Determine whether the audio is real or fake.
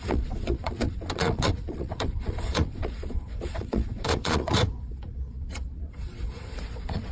fake